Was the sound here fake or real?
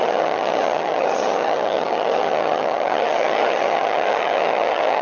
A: fake